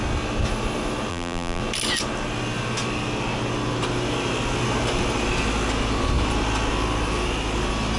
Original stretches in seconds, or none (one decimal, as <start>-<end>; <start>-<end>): 0.0-1.1; 1.6-8.0